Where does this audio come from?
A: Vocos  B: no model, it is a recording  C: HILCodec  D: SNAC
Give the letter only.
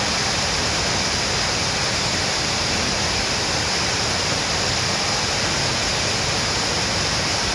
B